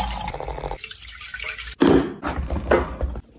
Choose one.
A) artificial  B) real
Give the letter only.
B